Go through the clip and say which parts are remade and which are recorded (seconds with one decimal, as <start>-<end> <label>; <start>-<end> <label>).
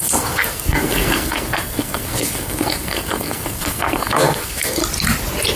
0.0-4.8 remade; 4.8-5.6 recorded